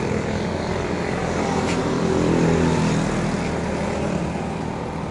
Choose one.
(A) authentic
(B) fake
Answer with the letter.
A